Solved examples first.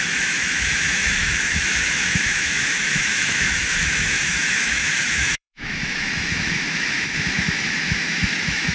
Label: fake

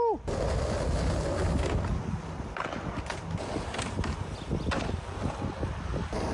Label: real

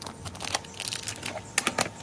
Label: real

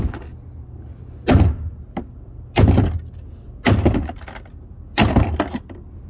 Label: real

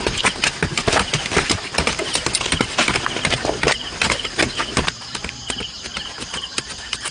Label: real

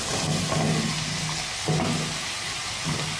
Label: real